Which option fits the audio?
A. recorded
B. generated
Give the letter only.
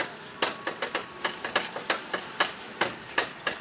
A